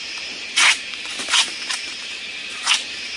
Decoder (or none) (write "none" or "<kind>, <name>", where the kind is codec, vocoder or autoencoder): vocoder, BigVGAN v2